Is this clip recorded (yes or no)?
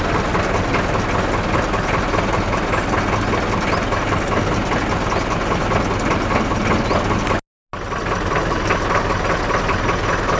yes